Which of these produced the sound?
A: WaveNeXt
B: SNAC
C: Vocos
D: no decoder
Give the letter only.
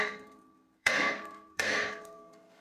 B